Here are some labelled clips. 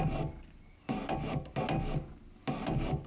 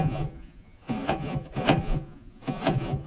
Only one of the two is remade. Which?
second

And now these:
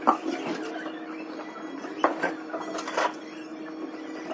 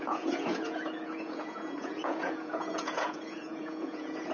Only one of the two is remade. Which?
second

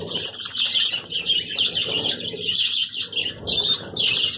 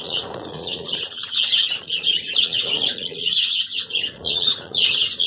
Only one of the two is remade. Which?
second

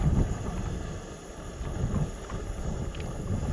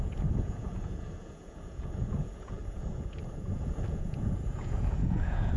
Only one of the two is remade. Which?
second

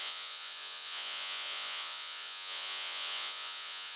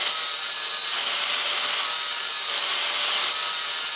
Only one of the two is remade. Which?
first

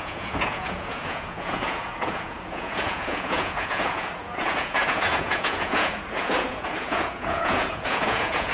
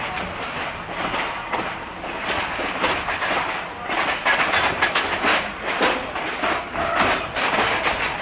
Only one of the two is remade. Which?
first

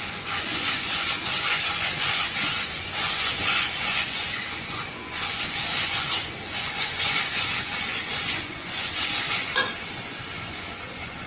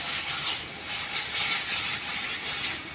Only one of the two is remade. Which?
first